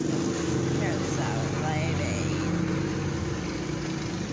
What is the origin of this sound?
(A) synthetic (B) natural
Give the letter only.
B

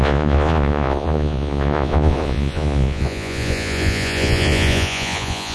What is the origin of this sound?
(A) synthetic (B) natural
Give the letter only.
A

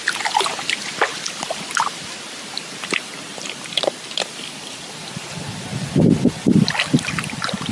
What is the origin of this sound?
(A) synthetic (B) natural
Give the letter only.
B